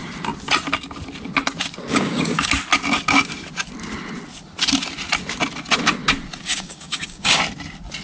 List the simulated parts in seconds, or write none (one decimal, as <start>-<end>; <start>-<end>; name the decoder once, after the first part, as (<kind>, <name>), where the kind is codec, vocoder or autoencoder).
1.9-2.5 (codec, DAC); 6.4-7.4